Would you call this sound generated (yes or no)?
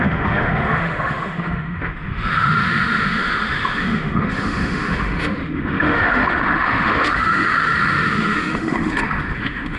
yes